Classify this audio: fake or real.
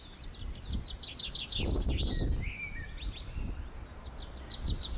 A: real